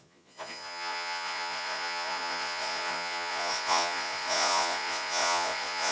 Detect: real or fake fake